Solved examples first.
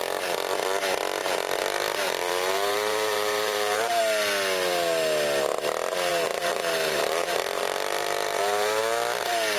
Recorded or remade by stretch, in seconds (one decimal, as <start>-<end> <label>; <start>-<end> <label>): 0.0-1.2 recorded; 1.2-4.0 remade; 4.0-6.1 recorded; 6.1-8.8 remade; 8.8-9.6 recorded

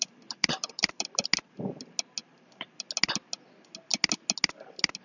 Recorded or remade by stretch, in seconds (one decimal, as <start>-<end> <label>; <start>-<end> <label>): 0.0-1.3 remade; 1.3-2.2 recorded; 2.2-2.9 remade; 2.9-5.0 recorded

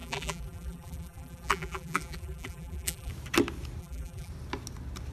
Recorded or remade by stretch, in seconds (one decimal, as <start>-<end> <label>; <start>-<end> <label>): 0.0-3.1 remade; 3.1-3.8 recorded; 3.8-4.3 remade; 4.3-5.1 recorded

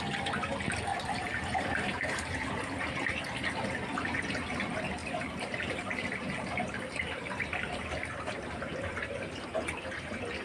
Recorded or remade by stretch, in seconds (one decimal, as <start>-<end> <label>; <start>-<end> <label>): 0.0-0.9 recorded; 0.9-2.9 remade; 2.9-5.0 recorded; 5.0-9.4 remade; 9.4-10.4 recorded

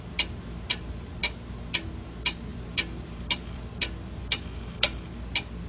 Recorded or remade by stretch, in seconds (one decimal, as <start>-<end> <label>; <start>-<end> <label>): 0.0-2.5 recorded; 2.5-4.2 remade; 4.2-5.7 recorded

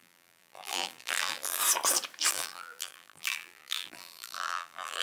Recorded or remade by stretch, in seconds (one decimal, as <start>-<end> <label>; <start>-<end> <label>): 0.0-1.6 remade; 1.6-2.3 recorded; 2.3-5.0 remade